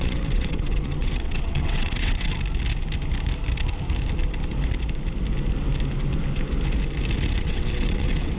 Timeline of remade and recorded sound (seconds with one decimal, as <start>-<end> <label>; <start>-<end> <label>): 0.0-2.3 remade; 2.3-7.3 recorded; 7.3-8.4 remade